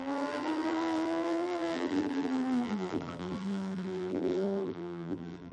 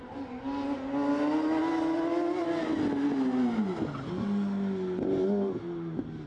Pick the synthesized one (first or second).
first